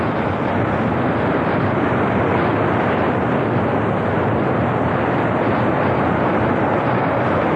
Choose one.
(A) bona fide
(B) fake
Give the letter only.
A